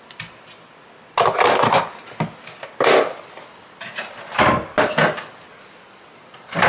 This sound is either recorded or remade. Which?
recorded